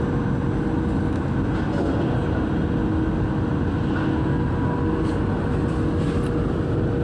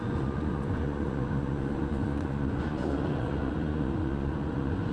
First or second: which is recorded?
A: first